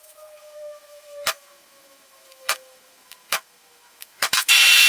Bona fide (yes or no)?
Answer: no